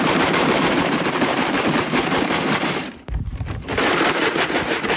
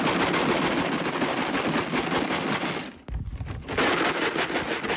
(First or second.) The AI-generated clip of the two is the first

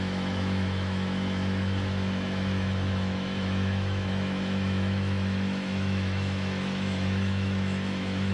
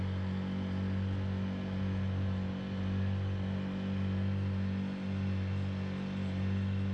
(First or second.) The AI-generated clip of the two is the first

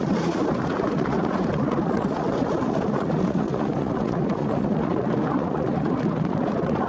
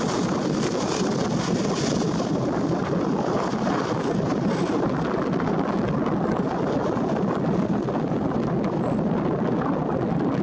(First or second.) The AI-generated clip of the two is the first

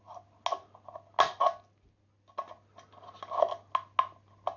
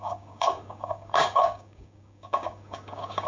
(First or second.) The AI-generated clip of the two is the second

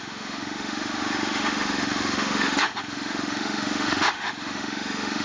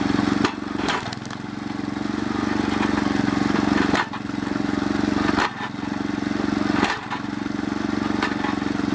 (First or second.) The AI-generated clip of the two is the first